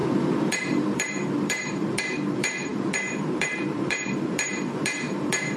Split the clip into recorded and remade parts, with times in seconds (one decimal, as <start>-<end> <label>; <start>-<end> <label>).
0.0-5.6 remade